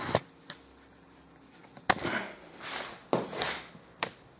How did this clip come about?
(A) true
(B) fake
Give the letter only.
A